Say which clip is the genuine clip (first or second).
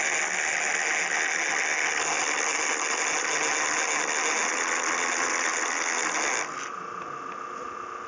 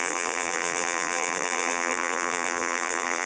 first